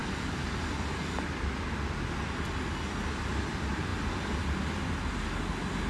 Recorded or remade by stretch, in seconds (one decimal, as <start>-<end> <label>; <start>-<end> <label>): 0.0-5.9 recorded

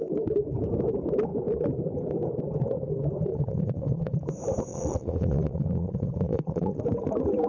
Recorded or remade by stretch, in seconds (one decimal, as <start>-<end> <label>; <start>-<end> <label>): 0.0-3.3 recorded; 3.3-4.2 remade; 4.2-4.7 recorded; 4.7-6.8 remade; 6.8-7.5 recorded

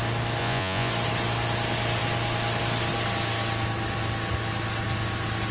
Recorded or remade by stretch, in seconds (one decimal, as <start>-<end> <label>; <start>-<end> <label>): 0.0-0.4 recorded; 0.4-0.9 remade; 0.9-5.5 recorded

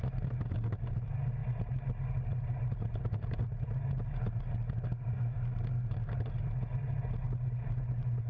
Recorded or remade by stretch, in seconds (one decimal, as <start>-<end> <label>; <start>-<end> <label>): 0.0-8.3 recorded